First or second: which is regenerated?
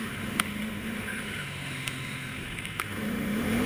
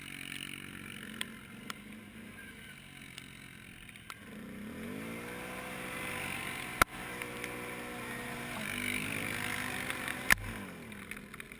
first